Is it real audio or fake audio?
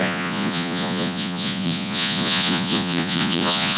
fake